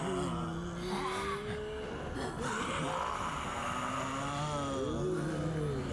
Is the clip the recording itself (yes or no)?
yes